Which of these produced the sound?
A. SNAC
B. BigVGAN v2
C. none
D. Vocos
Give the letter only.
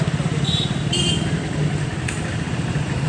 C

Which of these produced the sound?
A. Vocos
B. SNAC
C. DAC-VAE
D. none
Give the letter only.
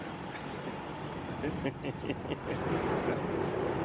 D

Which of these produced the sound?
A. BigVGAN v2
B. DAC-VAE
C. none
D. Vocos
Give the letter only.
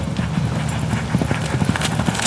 C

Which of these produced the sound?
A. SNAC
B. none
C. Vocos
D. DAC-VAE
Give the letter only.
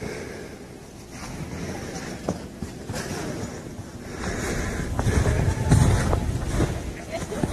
B